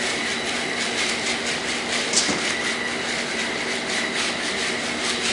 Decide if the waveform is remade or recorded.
recorded